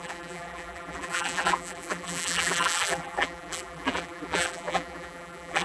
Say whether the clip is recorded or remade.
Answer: remade